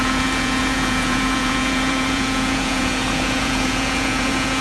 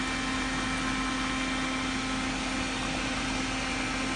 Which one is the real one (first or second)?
second